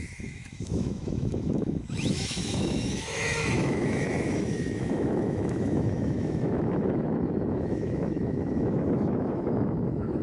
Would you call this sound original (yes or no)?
no